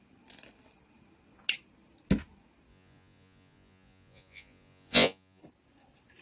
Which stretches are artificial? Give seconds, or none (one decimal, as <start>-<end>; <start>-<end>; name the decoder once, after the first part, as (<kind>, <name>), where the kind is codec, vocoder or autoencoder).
2.7-5.4 (vocoder, Vocos)